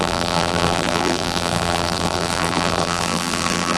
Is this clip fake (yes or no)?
yes